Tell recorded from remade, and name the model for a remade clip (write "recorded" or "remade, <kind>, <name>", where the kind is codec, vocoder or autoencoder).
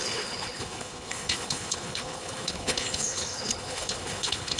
remade, codec, HILCodec